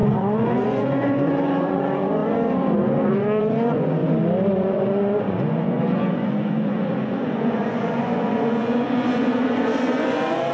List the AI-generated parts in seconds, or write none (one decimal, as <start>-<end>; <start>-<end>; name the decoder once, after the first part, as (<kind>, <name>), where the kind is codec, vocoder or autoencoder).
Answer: 0.0-4.0 (vocoder, Vocos); 4.5-10.5